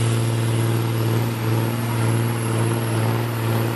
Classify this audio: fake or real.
real